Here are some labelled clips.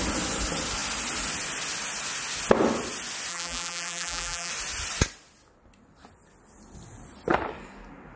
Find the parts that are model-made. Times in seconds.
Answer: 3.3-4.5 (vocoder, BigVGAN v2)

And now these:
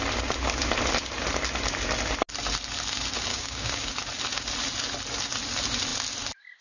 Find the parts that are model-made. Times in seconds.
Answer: 3.3-3.9 (codec, DAC)

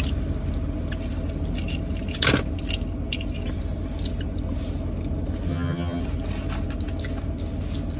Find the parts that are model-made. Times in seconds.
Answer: 5.5-6.0 (vocoder, HiFi-GAN)

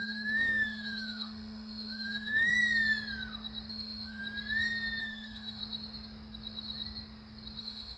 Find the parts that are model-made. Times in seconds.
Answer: 0.0-2.5 (autoencoder, DAC-VAE); 3.7-4.2; 5.0-5.6; 7.6-8.0